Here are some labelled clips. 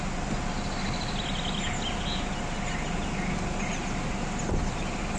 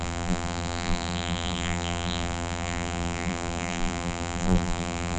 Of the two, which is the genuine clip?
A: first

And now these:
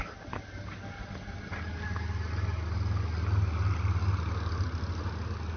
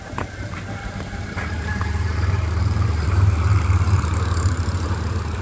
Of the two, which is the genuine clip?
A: first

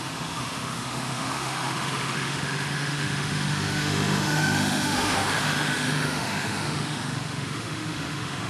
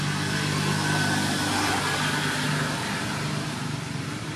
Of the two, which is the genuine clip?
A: second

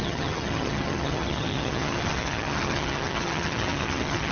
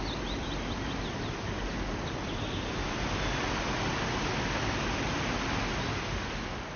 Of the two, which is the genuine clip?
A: second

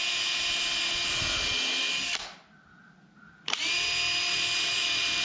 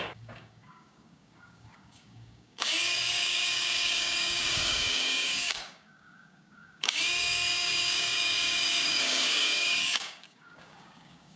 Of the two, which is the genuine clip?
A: first